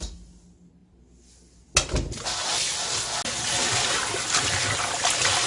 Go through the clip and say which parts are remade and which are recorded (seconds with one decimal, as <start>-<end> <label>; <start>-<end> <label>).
0.0-5.5 recorded